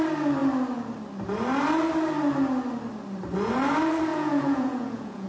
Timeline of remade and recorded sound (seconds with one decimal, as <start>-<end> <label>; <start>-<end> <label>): 0.0-4.1 recorded; 4.1-5.3 remade